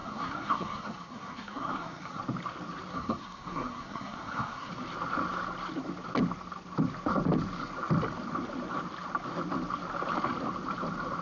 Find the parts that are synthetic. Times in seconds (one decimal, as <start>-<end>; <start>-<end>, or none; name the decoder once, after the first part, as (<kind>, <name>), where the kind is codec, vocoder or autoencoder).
0.0-2.2 (codec, SNAC); 2.9-4.7